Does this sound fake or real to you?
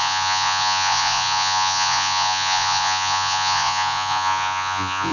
fake